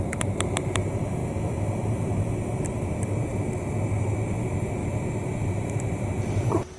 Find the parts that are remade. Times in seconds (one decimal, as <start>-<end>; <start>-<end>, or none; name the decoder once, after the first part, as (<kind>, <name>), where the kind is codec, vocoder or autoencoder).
0.0-1.2 (vocoder, BigVGAN v2); 1.8-3.3; 4.0-4.8; 5.3-6.8